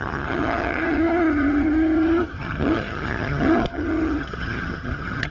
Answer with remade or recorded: remade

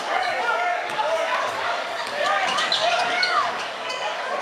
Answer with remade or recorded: remade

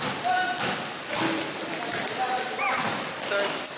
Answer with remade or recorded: recorded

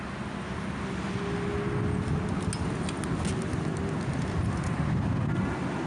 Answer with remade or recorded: recorded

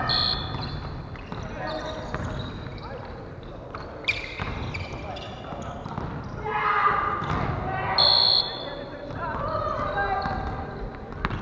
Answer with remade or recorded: recorded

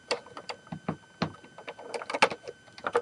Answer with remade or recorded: recorded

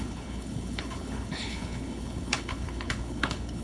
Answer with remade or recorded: remade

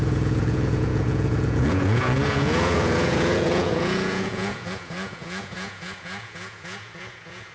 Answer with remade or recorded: remade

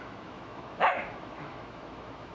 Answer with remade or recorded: remade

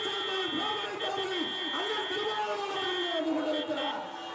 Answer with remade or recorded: recorded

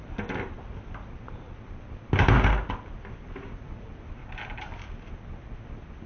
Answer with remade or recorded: recorded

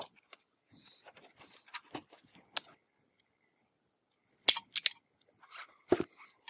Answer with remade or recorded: recorded